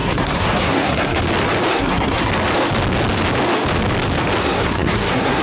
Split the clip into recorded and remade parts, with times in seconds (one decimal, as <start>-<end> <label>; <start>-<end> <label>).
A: 0.0-1.2 remade; 1.2-1.7 recorded; 1.7-2.3 remade; 2.3-4.4 recorded; 4.4-5.4 remade